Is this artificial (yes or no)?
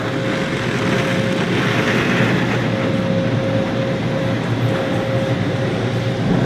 no